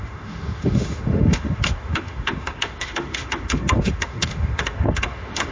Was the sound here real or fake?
fake